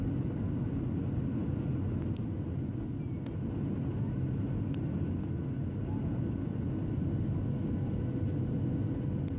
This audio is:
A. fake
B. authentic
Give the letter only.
B